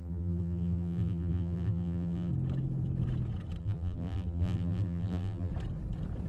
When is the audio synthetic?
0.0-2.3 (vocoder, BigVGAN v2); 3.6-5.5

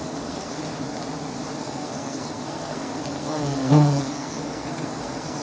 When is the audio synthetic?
0.0-0.6 (codec, SNAC); 1.6-5.4

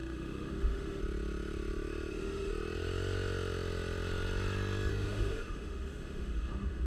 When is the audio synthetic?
0.0-1.0 (autoencoder, DAC-VAE); 2.1-2.5; 4.9-6.9